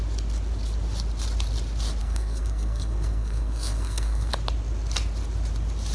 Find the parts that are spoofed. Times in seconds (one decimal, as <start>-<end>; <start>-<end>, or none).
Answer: 2.0-4.3